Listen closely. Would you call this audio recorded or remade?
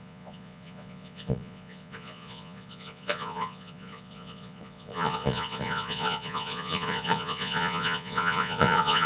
remade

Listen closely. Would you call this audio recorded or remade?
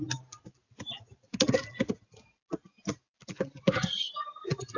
recorded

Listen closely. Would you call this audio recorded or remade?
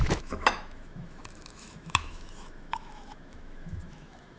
remade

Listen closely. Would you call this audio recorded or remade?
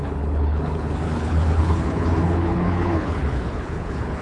remade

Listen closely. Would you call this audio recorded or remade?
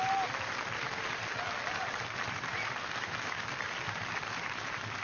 recorded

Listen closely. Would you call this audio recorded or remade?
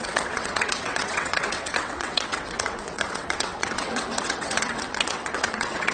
remade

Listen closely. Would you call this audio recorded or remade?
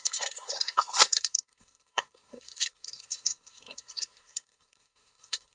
remade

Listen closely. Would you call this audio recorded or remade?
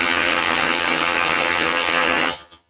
remade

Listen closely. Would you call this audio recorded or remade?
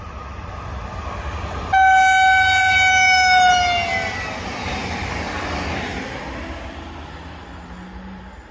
recorded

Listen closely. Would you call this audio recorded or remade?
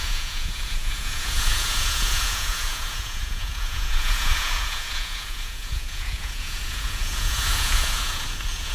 remade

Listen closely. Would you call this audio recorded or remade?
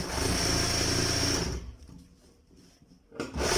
recorded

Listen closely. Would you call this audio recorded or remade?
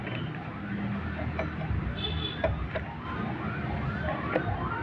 recorded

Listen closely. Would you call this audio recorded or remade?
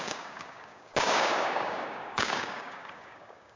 remade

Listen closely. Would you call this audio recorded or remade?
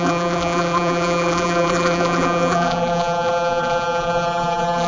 remade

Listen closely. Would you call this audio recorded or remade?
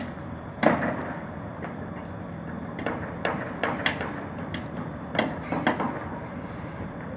recorded